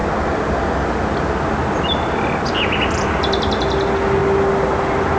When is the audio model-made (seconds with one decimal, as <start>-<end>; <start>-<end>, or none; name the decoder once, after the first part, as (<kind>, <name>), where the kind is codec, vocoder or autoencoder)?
none